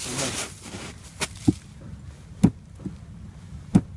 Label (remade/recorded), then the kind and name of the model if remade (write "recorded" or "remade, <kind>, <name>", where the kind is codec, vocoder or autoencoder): recorded